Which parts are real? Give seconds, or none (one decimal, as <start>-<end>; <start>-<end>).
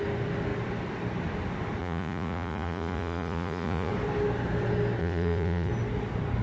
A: 0.0-1.8; 3.9-5.0; 5.7-6.4